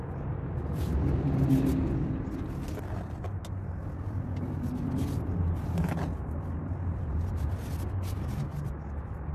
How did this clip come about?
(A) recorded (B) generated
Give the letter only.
A